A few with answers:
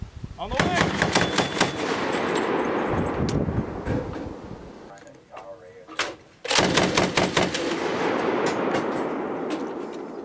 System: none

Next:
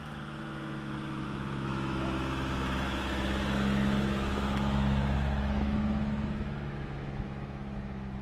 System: autoencoder, DAC-VAE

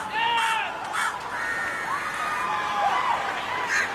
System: none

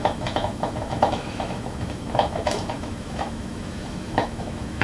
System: autoencoder, DAC-VAE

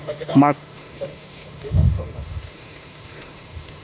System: autoencoder, DAC-VAE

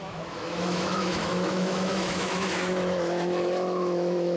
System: autoencoder, DAC-VAE